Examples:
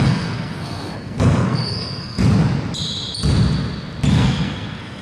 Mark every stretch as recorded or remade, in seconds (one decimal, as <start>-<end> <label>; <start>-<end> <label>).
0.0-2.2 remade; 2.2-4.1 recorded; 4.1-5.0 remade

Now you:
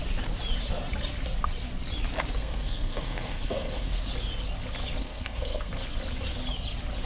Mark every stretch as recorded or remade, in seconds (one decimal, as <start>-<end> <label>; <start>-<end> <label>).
0.0-2.4 recorded; 2.4-4.0 remade; 4.0-5.0 recorded; 5.0-5.7 remade; 5.7-7.1 recorded

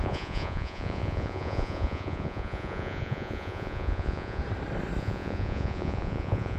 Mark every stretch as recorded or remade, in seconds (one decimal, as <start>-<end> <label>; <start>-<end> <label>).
0.0-4.4 remade; 4.4-5.0 recorded; 5.0-6.6 remade

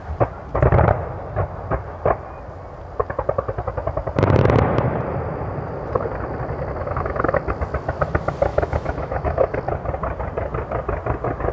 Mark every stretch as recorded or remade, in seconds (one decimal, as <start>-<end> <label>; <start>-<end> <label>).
0.0-6.8 recorded; 6.8-7.3 remade; 7.3-8.5 recorded; 8.5-9.6 remade; 9.6-11.5 recorded

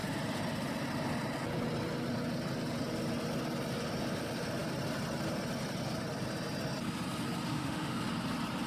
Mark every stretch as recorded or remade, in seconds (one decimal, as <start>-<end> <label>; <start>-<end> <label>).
0.0-7.5 recorded; 7.5-8.0 remade; 8.0-8.7 recorded

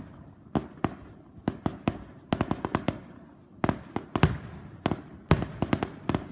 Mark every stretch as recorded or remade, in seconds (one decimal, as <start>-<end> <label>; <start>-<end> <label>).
0.0-6.3 recorded

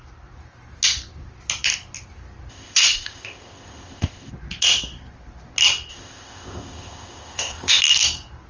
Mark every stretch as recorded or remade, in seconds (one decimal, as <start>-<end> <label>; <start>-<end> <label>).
0.0-2.5 recorded; 2.5-4.3 remade; 4.3-5.9 recorded; 5.9-7.8 remade; 7.8-8.5 recorded